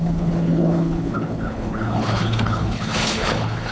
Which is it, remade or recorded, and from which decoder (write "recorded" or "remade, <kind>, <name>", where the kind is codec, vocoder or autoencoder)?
remade, codec, HILCodec